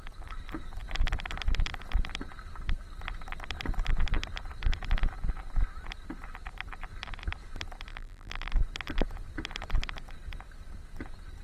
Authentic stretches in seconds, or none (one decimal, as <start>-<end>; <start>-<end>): 0.0-7.9; 8.5-11.4